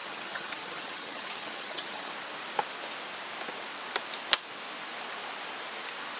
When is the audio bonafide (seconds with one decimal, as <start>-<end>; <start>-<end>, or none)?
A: 2.1-6.2